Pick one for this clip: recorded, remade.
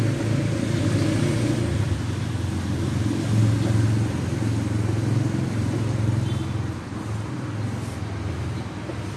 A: recorded